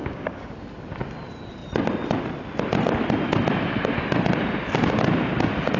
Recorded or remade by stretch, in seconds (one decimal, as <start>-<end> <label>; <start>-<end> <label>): 0.0-0.5 remade; 0.5-5.8 recorded